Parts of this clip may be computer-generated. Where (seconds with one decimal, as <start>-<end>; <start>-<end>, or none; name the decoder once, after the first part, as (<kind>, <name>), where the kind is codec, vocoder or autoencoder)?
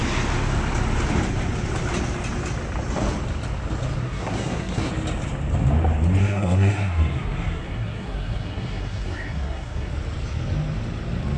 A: 4.0-4.9 (codec, SNAC); 6.2-9.9